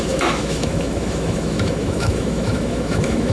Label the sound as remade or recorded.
remade